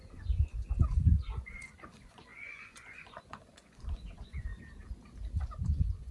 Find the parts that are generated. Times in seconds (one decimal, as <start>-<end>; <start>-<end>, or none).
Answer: 0.0-4.5; 5.4-6.1

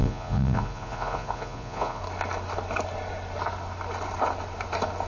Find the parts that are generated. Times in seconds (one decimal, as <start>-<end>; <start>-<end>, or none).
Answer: 0.0-2.0

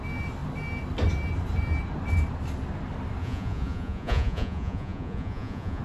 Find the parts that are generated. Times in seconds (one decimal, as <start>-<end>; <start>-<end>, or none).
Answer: 3.2-5.8

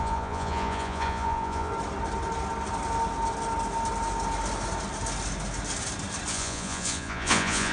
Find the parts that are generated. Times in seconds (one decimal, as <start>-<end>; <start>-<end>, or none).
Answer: 0.0-1.7; 6.3-7.7

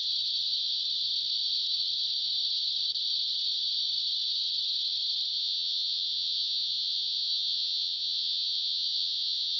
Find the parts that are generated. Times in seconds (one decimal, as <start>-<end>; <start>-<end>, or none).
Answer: 5.3-9.6

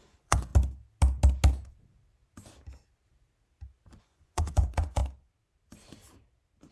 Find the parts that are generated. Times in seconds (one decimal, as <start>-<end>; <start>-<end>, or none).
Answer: 0.0-0.5; 4.0-5.0

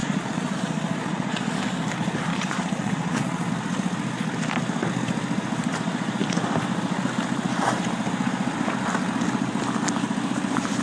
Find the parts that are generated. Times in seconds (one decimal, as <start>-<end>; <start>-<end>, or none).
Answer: 0.0-0.6; 1.0-1.6; 2.3-3.5

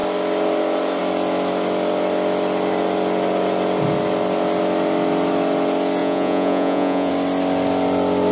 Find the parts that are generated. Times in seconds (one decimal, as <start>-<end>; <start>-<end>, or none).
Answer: 6.0-7.1